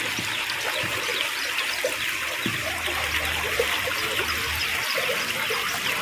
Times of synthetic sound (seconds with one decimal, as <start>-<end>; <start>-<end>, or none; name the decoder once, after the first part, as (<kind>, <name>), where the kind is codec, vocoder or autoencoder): none